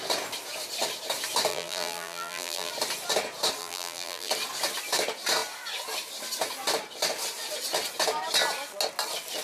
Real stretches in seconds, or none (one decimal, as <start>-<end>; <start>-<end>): 0.0-1.5; 2.7-3.6; 4.3-9.4